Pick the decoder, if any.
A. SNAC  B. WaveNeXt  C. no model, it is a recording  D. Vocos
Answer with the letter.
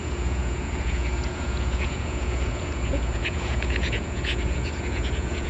D